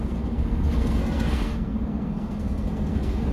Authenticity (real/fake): fake